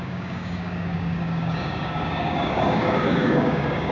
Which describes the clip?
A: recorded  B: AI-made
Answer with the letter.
B